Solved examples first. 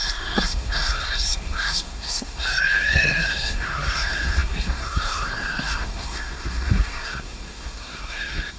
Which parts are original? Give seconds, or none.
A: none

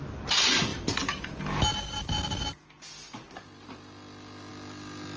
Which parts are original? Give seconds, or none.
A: 0.0-5.2

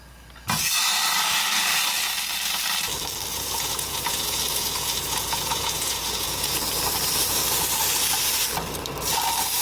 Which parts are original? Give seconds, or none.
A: 0.0-3.3; 6.6-9.6

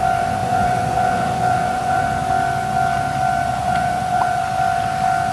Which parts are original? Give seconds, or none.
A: 0.0-0.4; 2.0-3.5; 4.4-5.3

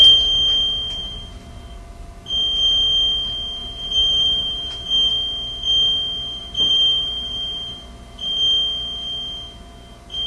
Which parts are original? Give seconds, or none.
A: 0.0-1.0; 1.7-3.6; 5.1-6.4; 8.3-10.3